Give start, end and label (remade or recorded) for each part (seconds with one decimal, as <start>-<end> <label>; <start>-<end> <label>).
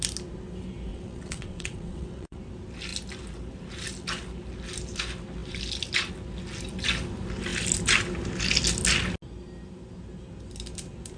0.0-0.9 recorded; 0.9-2.4 remade; 2.4-11.2 recorded